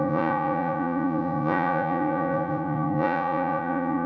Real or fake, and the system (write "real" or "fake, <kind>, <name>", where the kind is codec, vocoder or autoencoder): fake, vocoder, Vocos